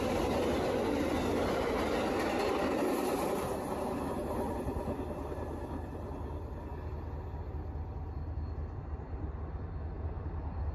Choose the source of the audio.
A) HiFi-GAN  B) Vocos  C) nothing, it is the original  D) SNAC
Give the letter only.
C